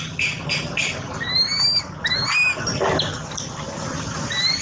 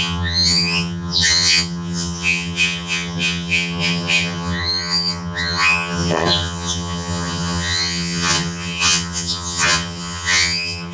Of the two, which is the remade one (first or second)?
second